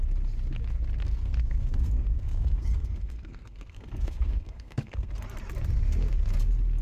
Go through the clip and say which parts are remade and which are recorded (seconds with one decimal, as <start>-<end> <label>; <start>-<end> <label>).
0.0-1.0 recorded; 1.0-5.1 remade; 5.1-6.8 recorded